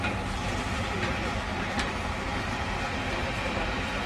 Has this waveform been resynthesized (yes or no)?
no